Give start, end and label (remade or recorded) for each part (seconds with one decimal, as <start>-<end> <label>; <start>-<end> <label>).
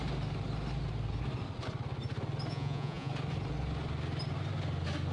0.0-2.5 recorded; 2.5-3.1 remade; 3.1-5.1 recorded